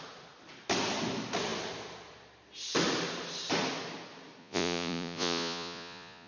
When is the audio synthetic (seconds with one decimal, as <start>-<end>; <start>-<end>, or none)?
4.4-6.3